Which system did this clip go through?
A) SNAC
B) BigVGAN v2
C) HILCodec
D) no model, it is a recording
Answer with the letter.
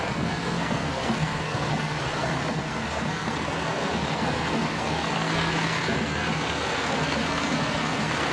A